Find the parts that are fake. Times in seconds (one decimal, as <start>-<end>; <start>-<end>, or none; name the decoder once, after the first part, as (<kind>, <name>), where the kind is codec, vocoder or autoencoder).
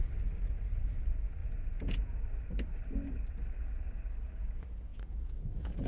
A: 1.4-2.1 (vocoder, Vocos); 4.9-5.9